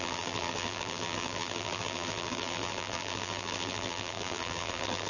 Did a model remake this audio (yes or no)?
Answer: yes